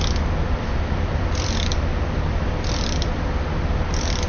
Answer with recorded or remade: remade